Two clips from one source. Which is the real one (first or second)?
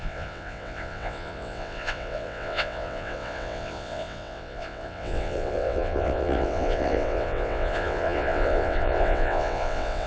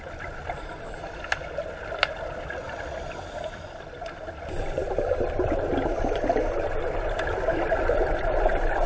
second